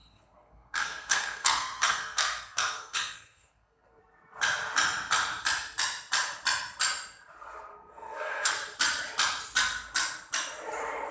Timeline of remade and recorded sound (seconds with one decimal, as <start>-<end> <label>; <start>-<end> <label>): 0.0-4.0 remade; 4.0-7.7 recorded; 7.7-8.5 remade; 8.5-11.1 recorded